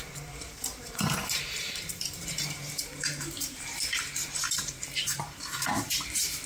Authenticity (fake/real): fake